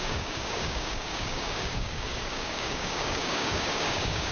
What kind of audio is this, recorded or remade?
remade